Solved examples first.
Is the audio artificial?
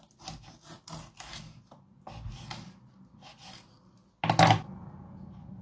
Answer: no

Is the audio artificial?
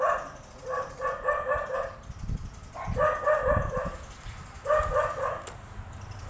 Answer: no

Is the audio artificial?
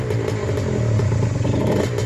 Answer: no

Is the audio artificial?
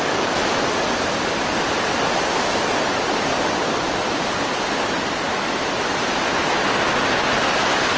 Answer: no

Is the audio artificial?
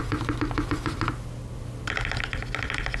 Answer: no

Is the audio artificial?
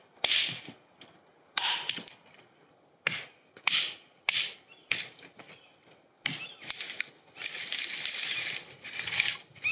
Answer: no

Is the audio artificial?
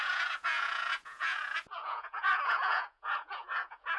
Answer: yes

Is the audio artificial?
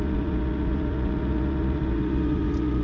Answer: yes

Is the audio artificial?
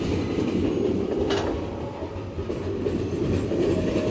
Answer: no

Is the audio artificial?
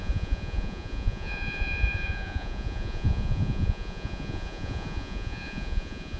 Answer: yes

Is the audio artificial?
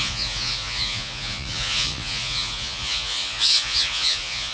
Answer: yes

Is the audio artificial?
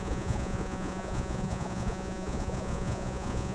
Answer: yes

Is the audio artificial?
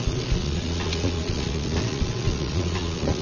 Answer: yes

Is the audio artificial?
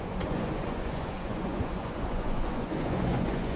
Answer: yes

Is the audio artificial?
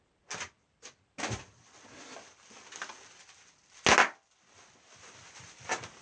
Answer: no